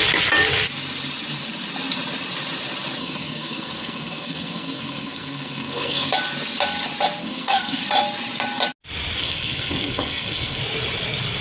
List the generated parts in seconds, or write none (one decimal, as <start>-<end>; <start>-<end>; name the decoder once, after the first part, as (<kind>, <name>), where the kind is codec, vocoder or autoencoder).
3.0-6.1 (codec, SNAC); 7.2-7.8; 9.2-10.6